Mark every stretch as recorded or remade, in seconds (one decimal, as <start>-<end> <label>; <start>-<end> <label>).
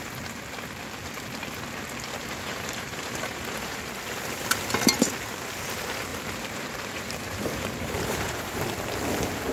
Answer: 0.0-2.2 recorded; 2.2-3.8 remade; 3.8-6.1 recorded; 6.1-8.6 remade; 8.6-9.5 recorded